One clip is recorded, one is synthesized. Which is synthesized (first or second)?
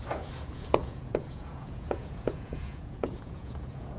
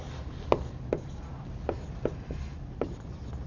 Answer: first